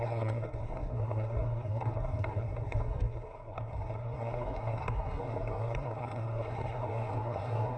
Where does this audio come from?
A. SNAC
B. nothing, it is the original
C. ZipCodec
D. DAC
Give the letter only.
A